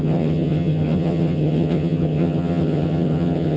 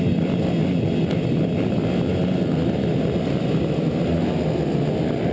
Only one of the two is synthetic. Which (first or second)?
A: first